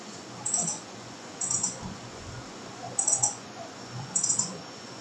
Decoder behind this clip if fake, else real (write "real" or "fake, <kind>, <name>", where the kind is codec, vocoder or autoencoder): fake, vocoder, Vocos